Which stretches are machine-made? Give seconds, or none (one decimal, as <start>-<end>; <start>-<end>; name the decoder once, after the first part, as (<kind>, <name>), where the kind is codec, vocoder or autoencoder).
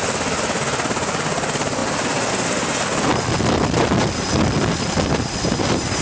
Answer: none